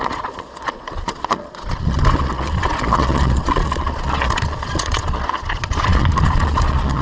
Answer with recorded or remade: remade